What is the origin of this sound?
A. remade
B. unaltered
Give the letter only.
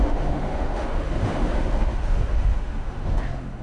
A